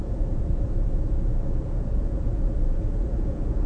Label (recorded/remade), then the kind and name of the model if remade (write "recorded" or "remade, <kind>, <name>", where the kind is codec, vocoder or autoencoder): remade, vocoder, Vocos